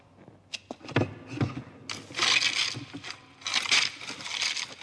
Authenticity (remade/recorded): recorded